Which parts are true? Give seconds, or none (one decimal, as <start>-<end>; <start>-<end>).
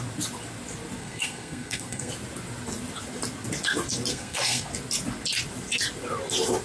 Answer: 0.0-1.0; 2.1-4.1; 4.7-6.6